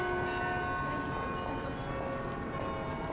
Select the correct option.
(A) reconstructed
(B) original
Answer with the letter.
B